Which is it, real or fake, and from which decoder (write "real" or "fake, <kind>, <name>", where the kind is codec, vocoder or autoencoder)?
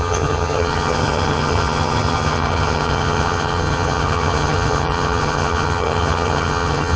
fake, vocoder, HiFi-GAN